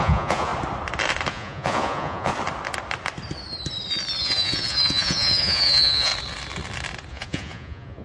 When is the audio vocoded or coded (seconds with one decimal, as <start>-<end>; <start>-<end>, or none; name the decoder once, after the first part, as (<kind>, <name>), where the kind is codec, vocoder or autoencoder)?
0.0-0.5 (vocoder, Vocos); 1.3-2.3; 4.2-6.1; 7.1-8.0